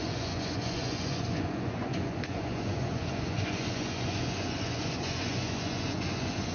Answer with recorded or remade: remade